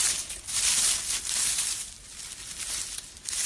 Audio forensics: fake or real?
real